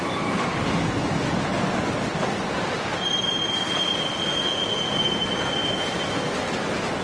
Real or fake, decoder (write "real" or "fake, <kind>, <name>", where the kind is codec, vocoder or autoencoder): real